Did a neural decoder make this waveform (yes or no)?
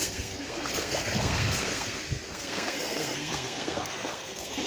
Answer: yes